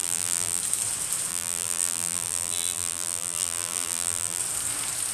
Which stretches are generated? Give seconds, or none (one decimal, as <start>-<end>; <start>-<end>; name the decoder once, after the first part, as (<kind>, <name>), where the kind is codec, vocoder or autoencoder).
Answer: 0.0-0.6 (vocoder, BigVGAN v2); 1.3-4.4